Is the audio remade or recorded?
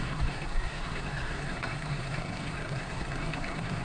remade